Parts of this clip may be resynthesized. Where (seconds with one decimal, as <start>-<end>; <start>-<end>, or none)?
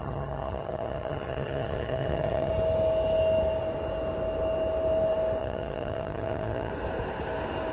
0.0-2.5; 5.4-6.7